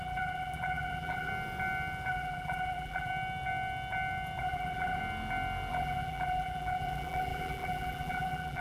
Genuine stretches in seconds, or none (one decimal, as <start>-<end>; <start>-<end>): 1.3-2.1; 3.1-4.4; 5.0-5.7